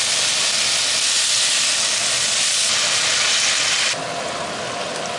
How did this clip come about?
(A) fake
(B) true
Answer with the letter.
B